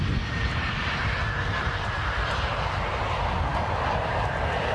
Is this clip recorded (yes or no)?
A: no